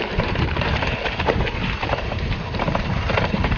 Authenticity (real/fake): fake